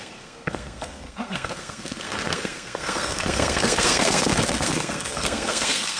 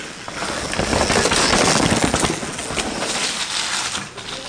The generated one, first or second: first